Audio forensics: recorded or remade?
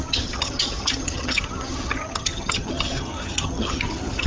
remade